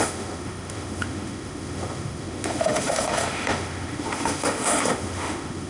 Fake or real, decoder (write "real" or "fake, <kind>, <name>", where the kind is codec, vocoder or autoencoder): fake, autoencoder, DAC-VAE